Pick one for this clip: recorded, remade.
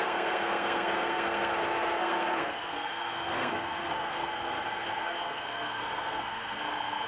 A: remade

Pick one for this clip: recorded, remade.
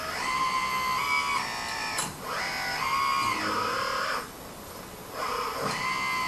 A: recorded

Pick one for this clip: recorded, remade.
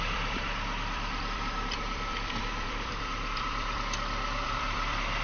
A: remade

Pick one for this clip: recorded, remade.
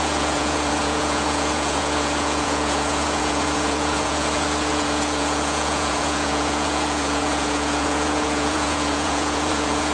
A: remade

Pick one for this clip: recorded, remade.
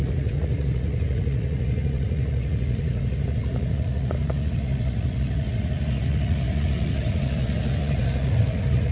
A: remade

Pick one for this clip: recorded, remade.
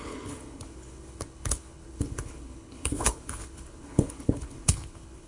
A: remade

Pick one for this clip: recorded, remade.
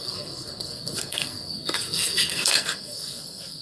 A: remade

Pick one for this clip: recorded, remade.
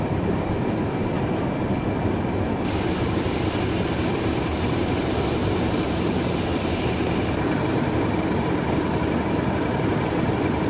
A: recorded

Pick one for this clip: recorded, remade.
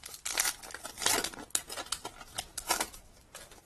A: recorded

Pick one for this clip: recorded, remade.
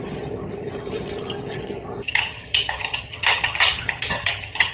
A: remade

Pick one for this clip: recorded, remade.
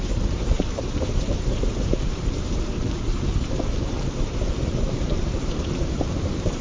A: remade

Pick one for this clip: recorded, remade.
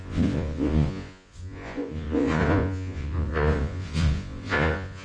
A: remade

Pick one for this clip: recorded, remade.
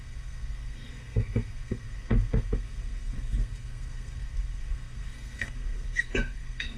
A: remade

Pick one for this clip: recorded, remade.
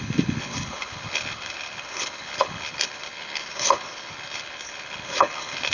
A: remade